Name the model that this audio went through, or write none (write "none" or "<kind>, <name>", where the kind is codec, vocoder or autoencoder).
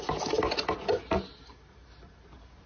none